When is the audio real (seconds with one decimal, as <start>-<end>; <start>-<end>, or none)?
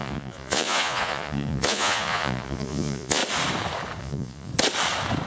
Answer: 3.2-4.0; 4.5-5.3